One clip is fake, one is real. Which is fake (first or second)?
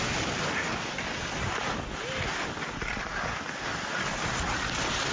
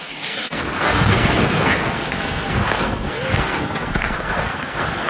second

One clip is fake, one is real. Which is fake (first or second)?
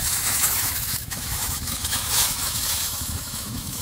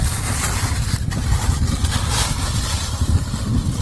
first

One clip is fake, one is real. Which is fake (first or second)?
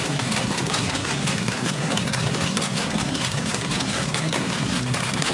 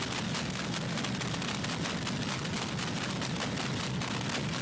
first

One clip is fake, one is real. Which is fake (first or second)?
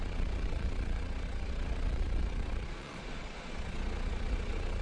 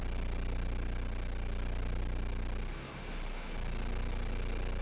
first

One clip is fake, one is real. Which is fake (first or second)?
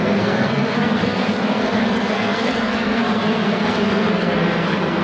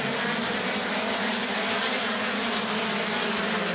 first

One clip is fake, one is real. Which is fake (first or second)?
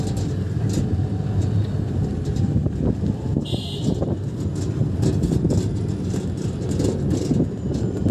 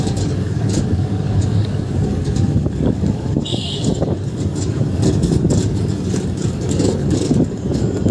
second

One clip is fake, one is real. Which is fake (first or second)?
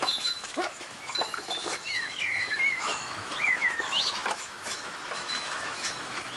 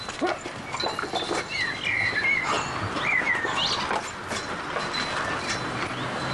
first